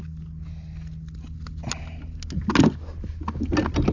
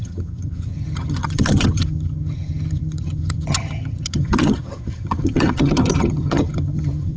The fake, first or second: second